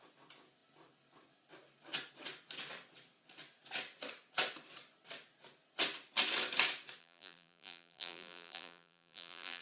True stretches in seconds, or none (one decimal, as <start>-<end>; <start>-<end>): 0.0-7.0